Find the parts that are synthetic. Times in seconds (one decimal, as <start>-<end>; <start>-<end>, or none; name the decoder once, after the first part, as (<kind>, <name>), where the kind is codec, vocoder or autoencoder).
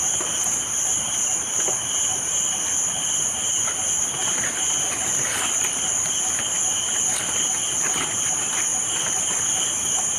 2.1-4.1 (vocoder, BigVGAN v2)